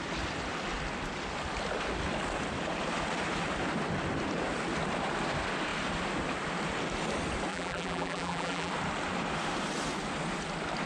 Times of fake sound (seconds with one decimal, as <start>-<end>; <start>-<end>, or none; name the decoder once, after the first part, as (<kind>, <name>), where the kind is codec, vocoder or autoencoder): 7.5-8.7 (vocoder, BigVGAN v2)